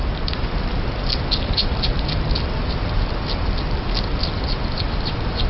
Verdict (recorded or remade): recorded